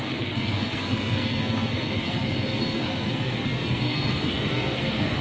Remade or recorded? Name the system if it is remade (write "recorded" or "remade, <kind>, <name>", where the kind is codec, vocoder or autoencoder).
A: remade, codec, SNAC